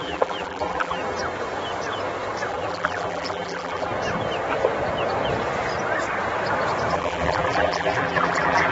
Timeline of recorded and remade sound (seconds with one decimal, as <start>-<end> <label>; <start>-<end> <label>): 0.0-1.0 remade; 1.0-2.5 recorded; 2.5-3.9 remade; 3.9-6.9 recorded; 6.9-8.7 remade